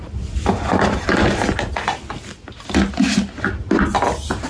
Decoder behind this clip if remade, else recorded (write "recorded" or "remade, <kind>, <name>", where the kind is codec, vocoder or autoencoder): recorded